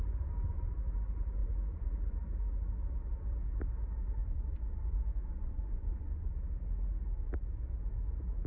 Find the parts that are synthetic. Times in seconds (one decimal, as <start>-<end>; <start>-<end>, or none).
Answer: 1.4-1.9; 4.2-6.3